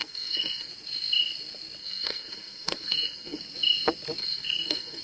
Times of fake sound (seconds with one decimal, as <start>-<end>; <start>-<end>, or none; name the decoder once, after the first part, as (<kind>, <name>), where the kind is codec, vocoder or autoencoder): 0.0-0.7 (codec, SNAC); 1.8-3.4; 4.2-5.0